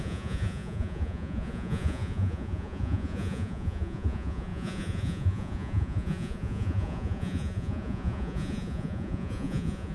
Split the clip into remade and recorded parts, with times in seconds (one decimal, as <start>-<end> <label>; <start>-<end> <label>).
0.0-9.9 remade